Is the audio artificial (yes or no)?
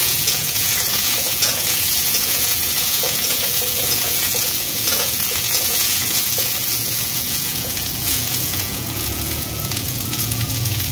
yes